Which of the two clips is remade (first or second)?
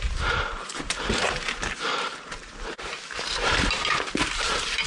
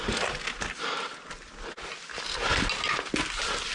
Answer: first